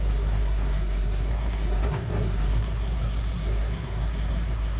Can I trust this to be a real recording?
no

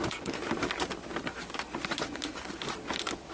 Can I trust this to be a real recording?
yes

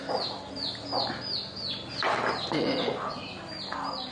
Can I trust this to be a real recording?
yes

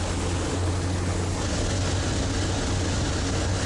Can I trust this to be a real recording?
yes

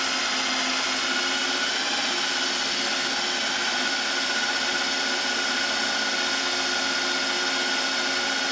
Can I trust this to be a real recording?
yes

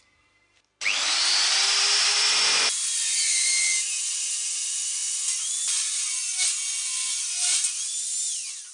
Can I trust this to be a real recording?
yes